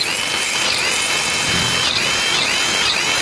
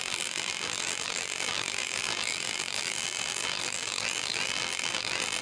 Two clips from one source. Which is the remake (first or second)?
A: second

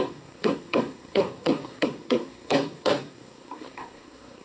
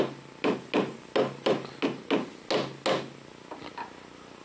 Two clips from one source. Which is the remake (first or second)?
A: first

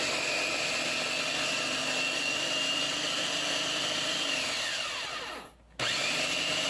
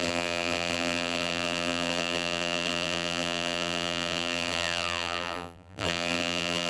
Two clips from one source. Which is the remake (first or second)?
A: second